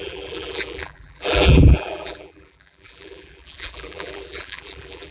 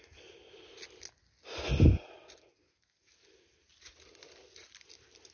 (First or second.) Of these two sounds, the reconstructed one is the first